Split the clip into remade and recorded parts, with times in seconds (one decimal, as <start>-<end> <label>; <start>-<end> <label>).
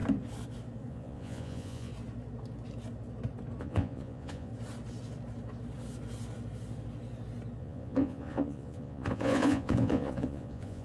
0.0-0.9 recorded; 0.9-1.9 remade; 1.9-3.6 recorded; 3.6-4.5 remade; 4.5-7.6 recorded; 7.6-10.8 remade